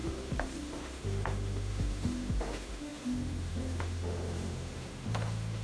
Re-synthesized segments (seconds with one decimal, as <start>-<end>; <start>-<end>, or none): 0.0-5.6